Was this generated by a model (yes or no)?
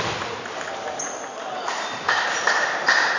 no